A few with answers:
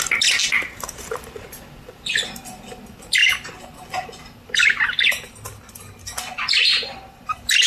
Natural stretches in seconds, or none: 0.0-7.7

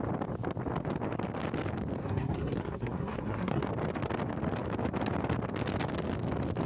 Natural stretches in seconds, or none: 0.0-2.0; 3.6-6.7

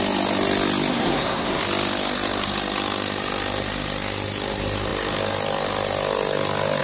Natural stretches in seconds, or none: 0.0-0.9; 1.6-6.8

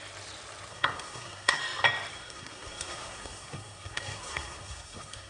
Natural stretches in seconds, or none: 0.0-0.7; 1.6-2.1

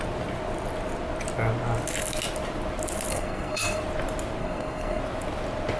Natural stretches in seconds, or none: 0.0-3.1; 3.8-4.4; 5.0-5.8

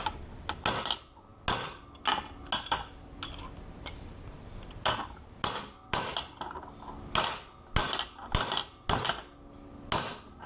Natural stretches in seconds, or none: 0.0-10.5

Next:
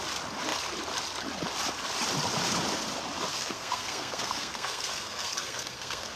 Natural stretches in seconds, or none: 0.0-3.3